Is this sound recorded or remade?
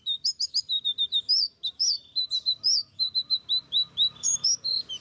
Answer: remade